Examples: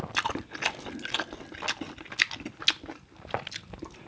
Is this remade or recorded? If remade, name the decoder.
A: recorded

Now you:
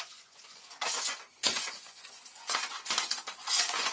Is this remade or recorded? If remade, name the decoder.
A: remade, vocoder, Vocos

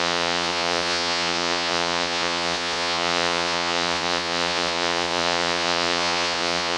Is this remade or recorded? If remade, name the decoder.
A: remade, vocoder, Vocos